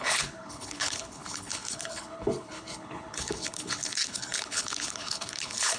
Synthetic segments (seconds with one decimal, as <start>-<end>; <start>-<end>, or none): 0.0-5.8